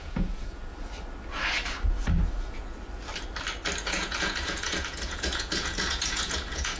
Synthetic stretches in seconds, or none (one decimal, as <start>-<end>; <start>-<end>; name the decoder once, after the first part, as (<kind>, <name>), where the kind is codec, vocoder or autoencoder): 0.0-0.6 (vocoder, Vocos); 3.8-6.8